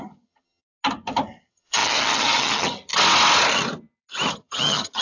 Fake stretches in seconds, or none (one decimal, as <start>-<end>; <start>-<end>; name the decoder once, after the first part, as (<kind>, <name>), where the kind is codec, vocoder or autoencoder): 0.0-0.6 (vocoder, HiFi-GAN); 1.4-2.9; 4.3-5.0